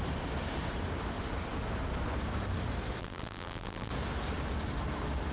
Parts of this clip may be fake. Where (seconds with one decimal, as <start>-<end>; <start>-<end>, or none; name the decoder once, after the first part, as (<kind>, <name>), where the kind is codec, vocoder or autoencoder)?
3.0-3.9 (vocoder, BigVGAN v2)